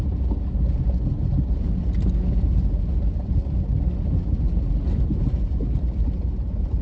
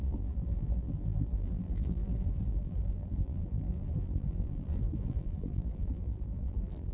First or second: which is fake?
second